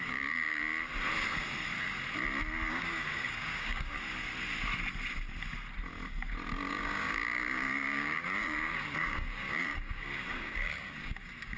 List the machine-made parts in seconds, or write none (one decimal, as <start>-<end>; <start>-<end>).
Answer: 0.0-0.6; 2.7-4.3; 6.7-11.6